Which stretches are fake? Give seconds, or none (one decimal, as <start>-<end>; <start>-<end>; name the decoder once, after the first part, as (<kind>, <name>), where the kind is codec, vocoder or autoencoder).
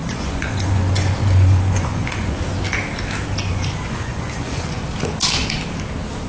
0.0-2.4 (vocoder, Vocos); 3.5-4.8